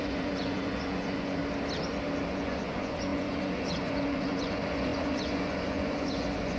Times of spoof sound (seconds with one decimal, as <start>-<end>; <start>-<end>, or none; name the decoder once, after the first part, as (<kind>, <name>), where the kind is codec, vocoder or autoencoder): 0.0-1.4 (vocoder, Vocos); 2.3-6.6